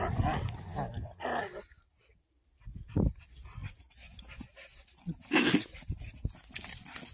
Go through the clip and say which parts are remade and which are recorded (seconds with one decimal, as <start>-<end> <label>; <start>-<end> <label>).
0.0-7.1 recorded

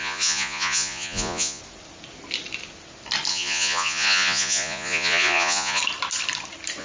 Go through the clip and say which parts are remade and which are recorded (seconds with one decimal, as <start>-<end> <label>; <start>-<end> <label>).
0.0-1.6 remade; 1.6-3.3 recorded; 3.3-5.8 remade; 5.8-6.8 recorded

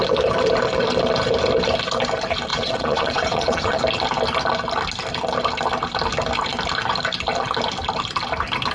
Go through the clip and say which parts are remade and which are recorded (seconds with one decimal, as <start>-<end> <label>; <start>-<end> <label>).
0.0-2.5 recorded; 2.5-3.8 remade; 3.8-8.7 recorded

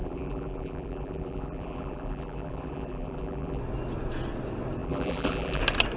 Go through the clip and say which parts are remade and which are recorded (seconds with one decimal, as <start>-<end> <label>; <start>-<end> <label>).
0.0-3.6 remade; 3.6-4.8 recorded; 4.8-5.6 remade; 5.6-6.0 recorded